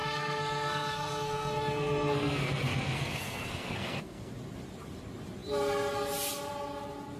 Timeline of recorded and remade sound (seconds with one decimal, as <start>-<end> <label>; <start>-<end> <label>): 0.0-4.3 remade; 4.3-7.2 recorded